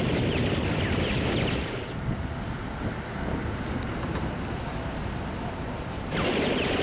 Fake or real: real